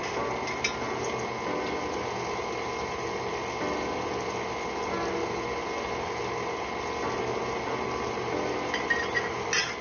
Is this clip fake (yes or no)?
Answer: no